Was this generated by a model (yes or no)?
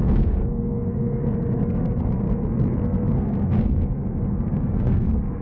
yes